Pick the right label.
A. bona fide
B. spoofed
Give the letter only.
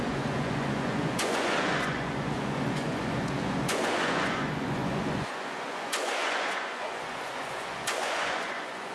B